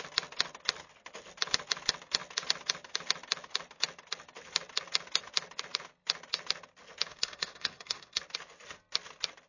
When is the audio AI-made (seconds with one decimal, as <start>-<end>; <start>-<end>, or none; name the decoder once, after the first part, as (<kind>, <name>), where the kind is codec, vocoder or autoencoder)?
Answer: 7.1-8.2 (codec, SNAC)